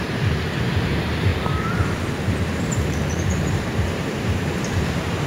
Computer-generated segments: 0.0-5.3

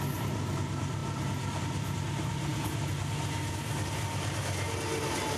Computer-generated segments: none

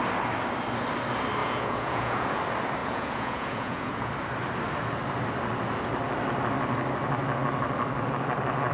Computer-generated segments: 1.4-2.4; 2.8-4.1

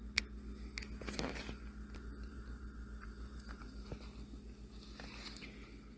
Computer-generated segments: 2.3-3.9